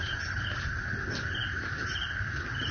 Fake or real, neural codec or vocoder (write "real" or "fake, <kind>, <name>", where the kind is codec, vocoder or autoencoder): real